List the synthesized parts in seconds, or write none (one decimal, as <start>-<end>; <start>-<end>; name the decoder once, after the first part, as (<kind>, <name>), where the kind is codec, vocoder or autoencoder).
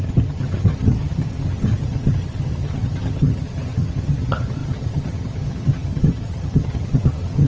0.0-7.5 (vocoder, HiFi-GAN)